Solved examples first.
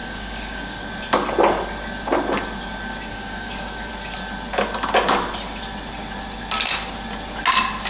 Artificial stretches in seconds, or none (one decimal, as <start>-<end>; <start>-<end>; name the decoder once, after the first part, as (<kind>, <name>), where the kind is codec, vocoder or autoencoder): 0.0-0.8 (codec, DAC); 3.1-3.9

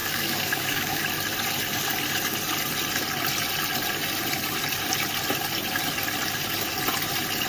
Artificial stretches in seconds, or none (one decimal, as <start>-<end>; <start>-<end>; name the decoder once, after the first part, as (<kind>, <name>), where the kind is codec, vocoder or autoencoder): 0.0-1.0 (codec, DAC)

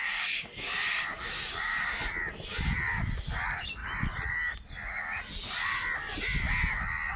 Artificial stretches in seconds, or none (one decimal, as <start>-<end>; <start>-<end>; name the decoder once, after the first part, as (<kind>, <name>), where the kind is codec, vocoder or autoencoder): 0.0-2.0 (codec, DAC)

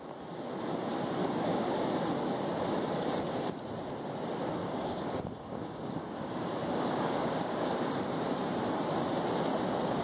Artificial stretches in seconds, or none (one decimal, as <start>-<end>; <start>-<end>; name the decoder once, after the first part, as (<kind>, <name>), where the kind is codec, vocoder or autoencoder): 1.2-1.8 (codec, DAC); 4.6-7.7

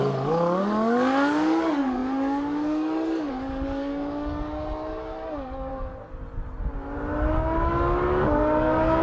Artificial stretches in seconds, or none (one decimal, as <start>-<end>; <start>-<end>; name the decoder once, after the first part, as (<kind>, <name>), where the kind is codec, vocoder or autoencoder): 0.0-5.7 (codec, DAC); 7.3-9.0

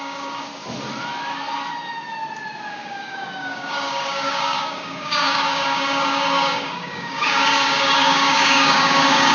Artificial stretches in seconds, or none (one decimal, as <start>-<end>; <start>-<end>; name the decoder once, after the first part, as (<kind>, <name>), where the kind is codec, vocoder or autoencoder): 0.0-0.5 (codec, DAC); 2.7-9.3

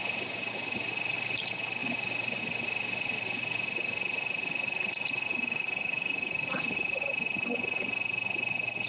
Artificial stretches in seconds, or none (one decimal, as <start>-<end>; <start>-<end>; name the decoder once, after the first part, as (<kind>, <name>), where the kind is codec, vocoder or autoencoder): 5.3-7.1 (codec, DAC)

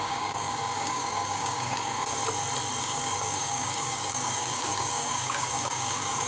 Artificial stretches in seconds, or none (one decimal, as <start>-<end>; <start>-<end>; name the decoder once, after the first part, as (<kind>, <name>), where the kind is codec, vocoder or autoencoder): 0.0-2.2 (codec, DAC); 2.8-6.3